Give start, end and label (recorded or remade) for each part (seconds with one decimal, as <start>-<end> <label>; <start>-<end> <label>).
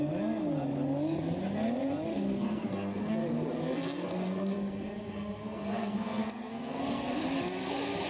0.0-2.1 recorded; 2.1-3.1 remade; 3.1-3.6 recorded; 3.6-7.2 remade; 7.2-8.1 recorded